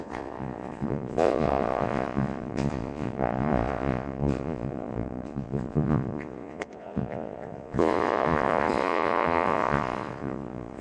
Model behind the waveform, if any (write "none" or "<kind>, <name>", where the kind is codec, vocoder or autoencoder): vocoder, Vocos